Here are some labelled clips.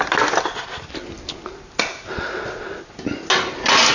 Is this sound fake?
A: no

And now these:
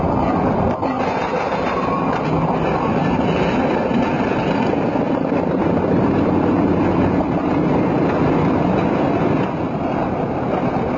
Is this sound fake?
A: no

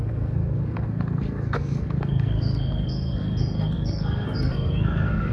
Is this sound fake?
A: yes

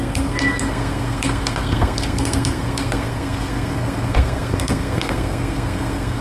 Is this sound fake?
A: yes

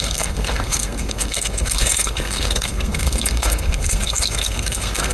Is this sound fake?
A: yes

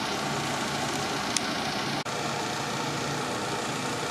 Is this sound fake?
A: no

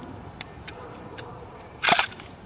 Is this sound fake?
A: yes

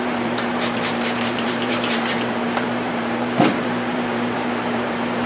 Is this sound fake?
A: yes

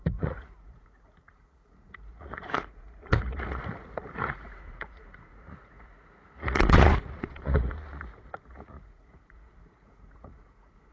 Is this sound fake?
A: yes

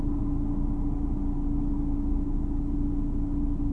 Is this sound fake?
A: no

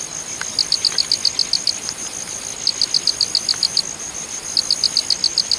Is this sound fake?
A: no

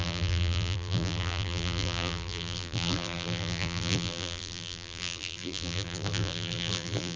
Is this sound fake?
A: yes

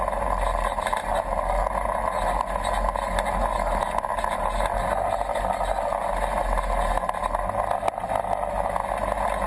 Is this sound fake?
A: no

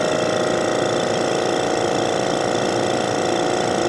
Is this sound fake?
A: no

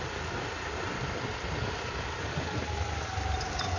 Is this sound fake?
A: no